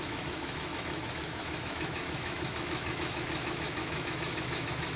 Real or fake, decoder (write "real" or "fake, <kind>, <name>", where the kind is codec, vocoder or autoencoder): fake, autoencoder, DAC-VAE